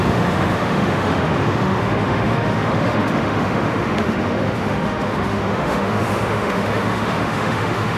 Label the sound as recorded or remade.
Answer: remade